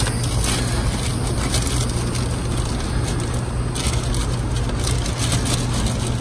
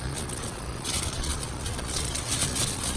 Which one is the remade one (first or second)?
second